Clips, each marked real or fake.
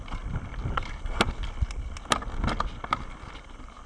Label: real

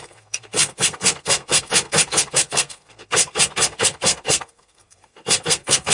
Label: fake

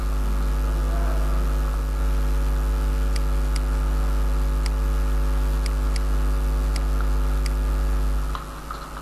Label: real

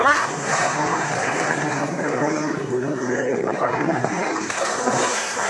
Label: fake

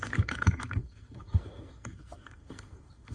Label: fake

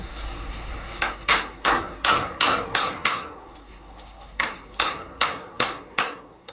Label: fake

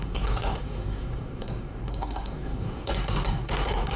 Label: fake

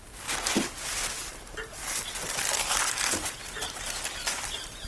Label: real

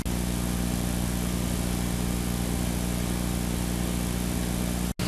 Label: real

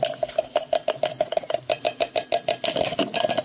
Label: real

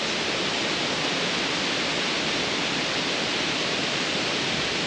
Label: real